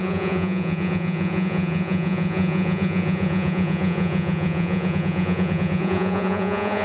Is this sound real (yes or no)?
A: no